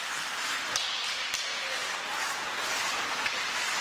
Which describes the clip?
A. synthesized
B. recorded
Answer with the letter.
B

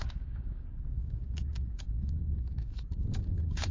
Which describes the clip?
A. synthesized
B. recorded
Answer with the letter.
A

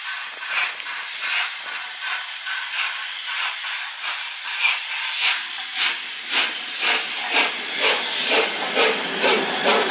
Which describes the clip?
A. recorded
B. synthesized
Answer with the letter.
A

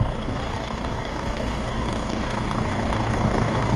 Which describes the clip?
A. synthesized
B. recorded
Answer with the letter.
A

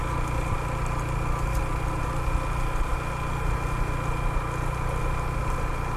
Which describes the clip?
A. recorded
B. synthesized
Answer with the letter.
A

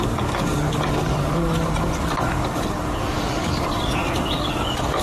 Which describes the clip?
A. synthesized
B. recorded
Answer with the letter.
A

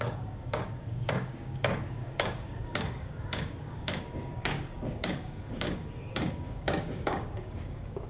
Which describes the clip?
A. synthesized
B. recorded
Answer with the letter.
A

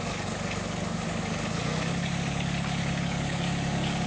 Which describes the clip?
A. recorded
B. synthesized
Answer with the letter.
B